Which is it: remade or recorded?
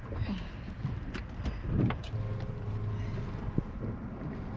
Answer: recorded